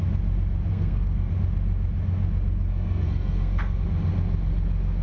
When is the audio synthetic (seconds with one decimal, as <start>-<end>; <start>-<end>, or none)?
0.7-1.3; 2.7-3.8

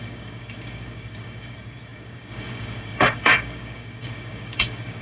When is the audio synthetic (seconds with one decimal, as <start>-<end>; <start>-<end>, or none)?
0.0-5.0

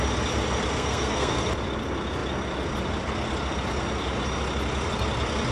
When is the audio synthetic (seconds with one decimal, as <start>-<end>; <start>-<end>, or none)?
0.7-1.4

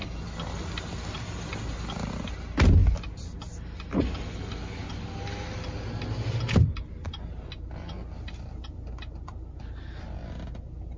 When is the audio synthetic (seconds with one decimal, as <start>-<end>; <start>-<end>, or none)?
none

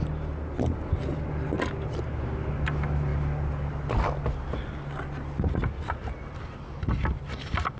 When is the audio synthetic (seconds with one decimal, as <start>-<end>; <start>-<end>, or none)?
none

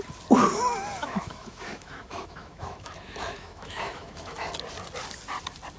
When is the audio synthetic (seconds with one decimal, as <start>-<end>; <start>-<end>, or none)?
1.0-4.5

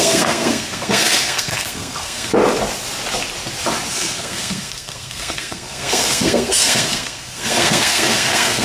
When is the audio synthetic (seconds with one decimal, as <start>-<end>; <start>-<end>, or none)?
0.0-2.3; 3.9-8.6